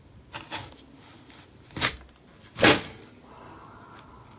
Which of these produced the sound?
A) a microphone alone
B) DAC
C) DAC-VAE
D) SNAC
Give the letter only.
A